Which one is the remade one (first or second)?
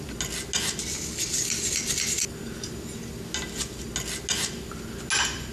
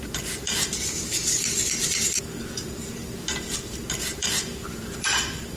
second